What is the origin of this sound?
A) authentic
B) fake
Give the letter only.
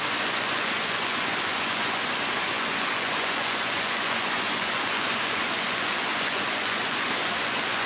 B